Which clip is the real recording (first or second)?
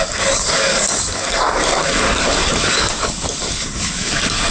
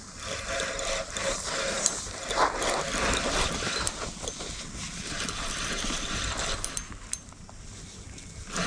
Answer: second